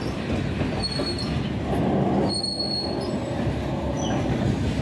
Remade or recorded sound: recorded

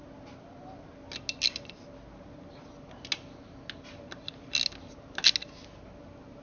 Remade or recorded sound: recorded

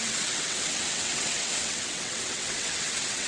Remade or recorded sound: remade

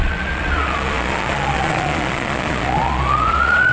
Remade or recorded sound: remade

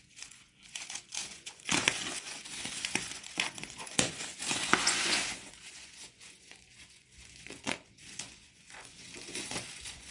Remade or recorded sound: remade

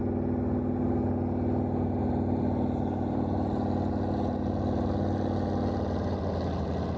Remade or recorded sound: recorded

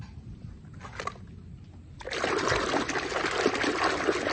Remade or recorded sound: recorded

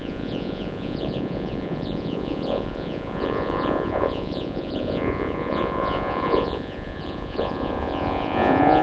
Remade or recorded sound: remade